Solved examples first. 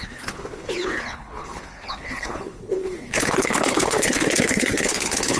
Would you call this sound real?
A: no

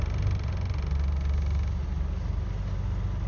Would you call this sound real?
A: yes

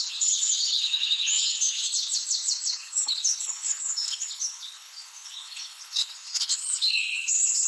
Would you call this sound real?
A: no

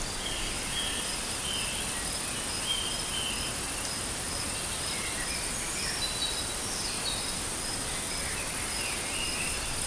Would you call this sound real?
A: yes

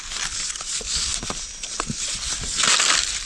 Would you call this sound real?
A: yes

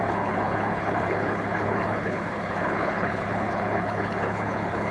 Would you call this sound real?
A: no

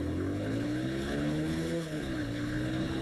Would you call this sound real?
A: no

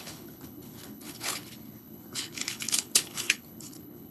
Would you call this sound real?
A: no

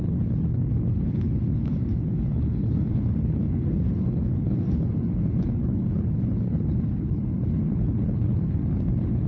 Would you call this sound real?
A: no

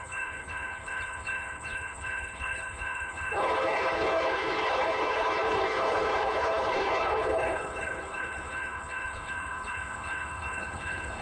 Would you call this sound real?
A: no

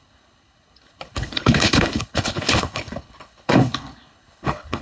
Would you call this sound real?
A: no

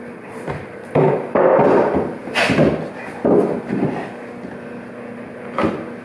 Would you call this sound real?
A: yes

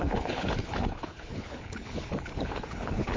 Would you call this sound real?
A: no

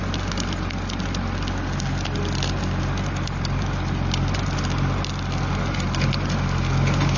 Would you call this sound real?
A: yes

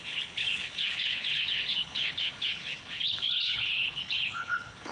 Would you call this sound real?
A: no